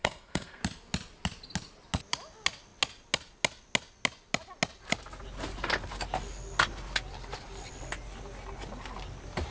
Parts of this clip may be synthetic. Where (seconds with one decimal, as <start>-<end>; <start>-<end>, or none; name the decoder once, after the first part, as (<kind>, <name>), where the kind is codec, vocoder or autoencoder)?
0.0-0.6 (codec, SNAC)